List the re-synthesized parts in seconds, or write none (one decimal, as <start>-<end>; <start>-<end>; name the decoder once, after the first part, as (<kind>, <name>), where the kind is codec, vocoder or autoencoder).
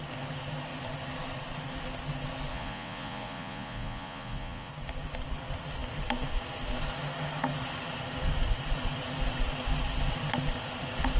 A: 2.5-4.7 (vocoder, Vocos)